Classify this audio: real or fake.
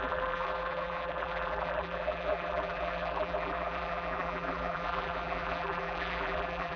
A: fake